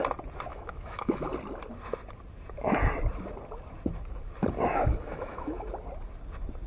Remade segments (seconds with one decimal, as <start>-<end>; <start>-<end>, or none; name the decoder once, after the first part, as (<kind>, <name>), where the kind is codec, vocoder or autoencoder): 0.5-1.3 (autoencoder, DAC-VAE); 4.7-5.7